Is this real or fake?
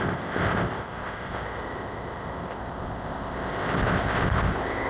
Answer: fake